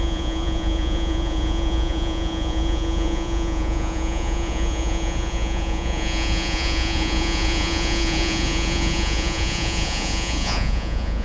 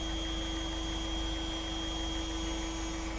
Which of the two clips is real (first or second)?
second